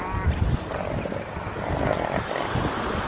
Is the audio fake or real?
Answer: real